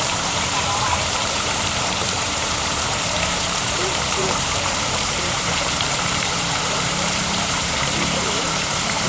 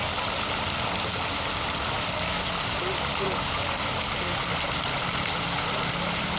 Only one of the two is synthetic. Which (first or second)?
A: first